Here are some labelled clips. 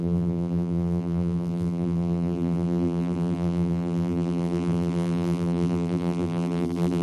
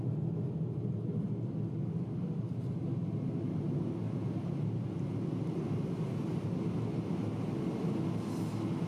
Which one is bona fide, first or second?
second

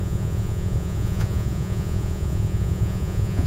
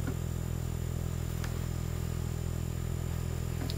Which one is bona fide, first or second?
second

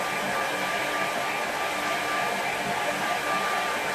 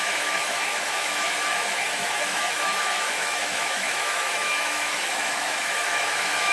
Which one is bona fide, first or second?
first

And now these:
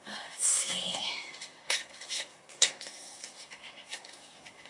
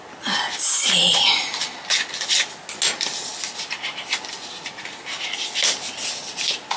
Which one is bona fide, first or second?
second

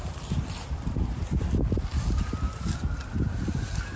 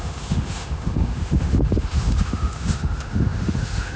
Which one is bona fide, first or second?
first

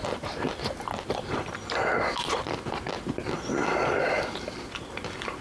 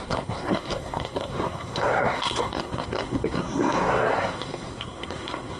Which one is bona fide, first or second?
first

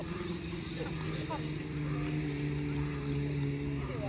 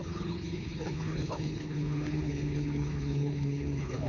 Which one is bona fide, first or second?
first